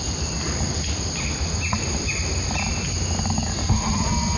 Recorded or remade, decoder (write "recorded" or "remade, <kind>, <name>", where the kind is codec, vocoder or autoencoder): recorded